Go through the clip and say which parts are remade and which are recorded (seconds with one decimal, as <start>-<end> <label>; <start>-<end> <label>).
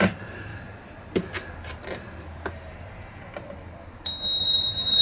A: 0.0-0.5 remade; 0.5-2.5 recorded; 2.5-3.3 remade; 3.3-4.4 recorded; 4.4-5.0 remade